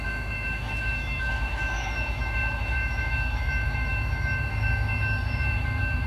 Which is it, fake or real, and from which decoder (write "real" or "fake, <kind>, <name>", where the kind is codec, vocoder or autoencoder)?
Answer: fake, autoencoder, DAC-VAE